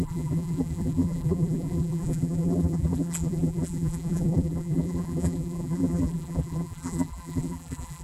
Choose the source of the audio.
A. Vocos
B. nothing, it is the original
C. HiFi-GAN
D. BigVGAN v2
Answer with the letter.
D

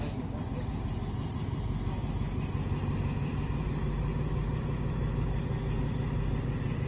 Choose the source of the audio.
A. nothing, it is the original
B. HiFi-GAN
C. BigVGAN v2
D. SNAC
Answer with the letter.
A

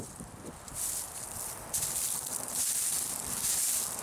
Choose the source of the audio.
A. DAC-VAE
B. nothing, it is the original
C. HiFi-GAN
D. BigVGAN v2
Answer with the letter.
D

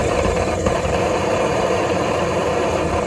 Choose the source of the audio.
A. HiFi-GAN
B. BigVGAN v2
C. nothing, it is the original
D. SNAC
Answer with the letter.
B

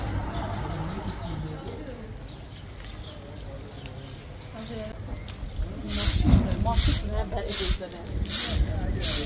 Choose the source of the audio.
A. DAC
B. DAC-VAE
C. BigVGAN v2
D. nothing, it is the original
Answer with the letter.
D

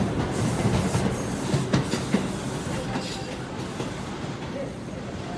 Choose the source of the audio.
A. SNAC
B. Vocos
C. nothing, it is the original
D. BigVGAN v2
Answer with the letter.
C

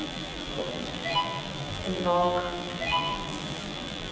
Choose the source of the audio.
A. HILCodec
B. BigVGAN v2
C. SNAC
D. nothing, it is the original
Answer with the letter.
B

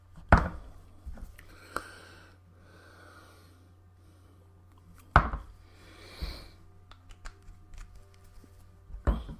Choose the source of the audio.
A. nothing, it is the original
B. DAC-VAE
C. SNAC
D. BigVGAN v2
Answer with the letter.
A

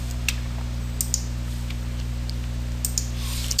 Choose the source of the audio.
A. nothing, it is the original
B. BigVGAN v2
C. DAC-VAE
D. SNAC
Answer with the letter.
A